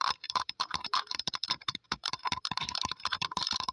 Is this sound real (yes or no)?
no